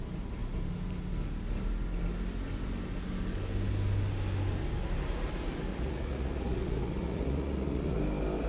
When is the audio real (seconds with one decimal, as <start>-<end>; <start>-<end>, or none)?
0.0-5.7; 8.0-8.5